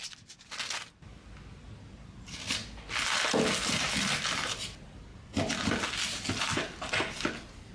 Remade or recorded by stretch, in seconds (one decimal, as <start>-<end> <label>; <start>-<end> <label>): 0.0-7.7 recorded